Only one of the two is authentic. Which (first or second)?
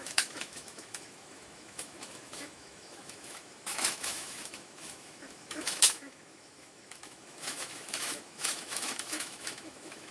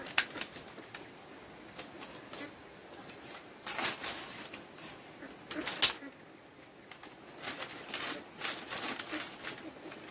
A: second